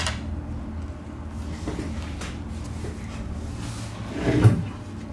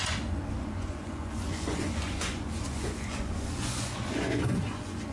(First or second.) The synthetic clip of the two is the second